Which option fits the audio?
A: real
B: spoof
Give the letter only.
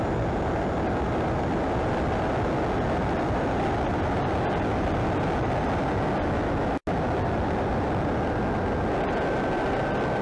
A